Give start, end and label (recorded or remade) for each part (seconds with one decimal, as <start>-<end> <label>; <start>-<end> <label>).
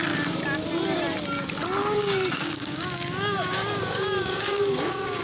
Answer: 0.0-1.8 recorded; 1.8-5.2 remade